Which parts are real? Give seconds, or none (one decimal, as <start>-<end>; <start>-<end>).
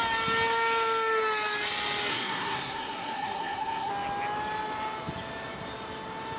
0.0-2.1; 3.9-6.4